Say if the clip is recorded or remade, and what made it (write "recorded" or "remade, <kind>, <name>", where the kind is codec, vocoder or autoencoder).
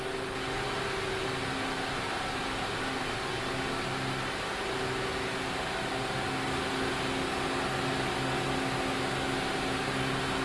recorded